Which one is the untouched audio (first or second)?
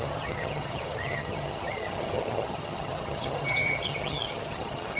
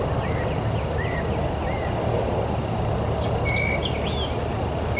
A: second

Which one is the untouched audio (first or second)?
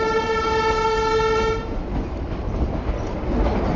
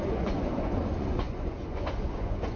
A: first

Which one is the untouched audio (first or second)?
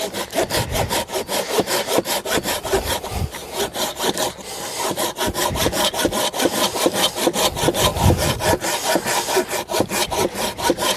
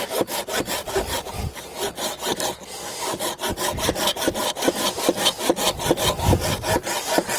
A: second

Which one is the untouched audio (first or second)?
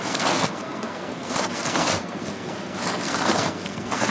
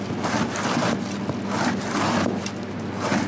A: second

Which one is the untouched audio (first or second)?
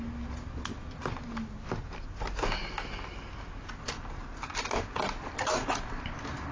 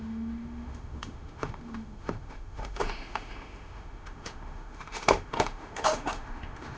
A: first